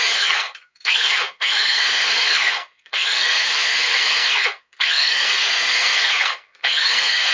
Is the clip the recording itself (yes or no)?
no